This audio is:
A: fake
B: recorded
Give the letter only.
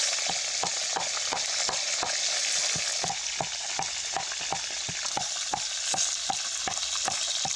B